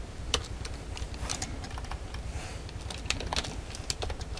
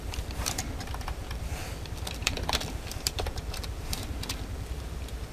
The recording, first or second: first